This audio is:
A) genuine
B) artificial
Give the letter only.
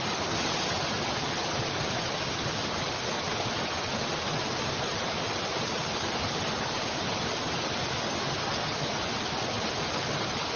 A